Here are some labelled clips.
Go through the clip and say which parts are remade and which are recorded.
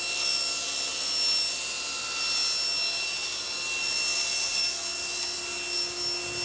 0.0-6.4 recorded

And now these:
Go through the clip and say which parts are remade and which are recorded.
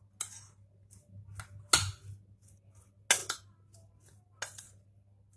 0.0-5.4 recorded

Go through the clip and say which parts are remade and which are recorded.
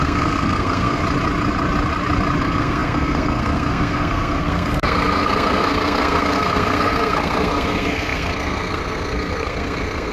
0.0-1.0 remade; 1.0-2.4 recorded; 2.4-10.1 remade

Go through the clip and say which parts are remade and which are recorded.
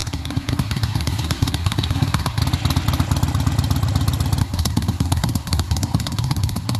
0.0-2.4 remade; 2.4-4.4 recorded; 4.4-6.8 remade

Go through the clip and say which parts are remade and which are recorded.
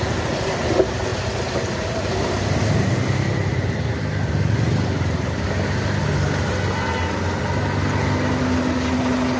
0.0-9.4 recorded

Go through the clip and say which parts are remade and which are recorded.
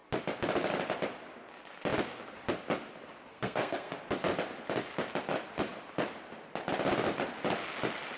0.0-3.3 recorded; 3.3-3.9 remade; 3.9-8.2 recorded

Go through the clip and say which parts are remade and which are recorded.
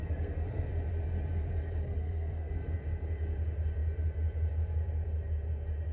0.0-0.7 remade; 0.7-1.8 recorded; 1.8-2.5 remade; 2.5-5.9 recorded